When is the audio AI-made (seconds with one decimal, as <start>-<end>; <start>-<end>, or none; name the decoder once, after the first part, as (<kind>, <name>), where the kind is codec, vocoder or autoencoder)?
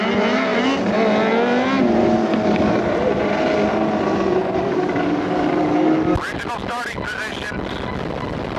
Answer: 2.2-2.8 (codec, DAC); 4.4-6.2